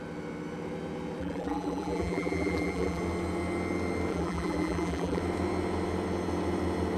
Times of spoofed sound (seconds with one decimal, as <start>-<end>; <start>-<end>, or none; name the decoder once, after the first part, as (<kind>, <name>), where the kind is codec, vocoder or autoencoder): 1.2-3.0 (vocoder, BigVGAN v2); 4.1-5.2